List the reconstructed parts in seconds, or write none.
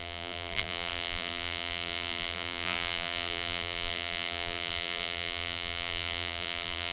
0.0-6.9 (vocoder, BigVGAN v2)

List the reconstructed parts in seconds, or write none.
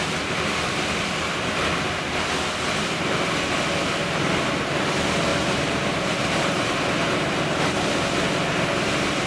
4.0-4.5 (vocoder, BigVGAN v2); 5.3-6.7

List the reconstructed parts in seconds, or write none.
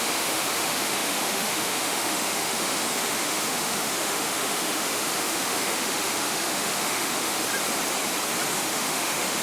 0.0-7.5 (autoencoder, DAC-VAE); 8.5-9.4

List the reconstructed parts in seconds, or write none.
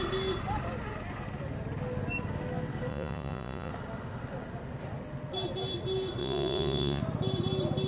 2.9-3.7 (vocoder, Vocos); 6.2-7.0